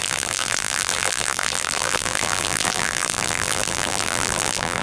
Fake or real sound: fake